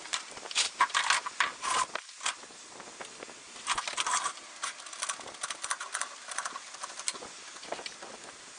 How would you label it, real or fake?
real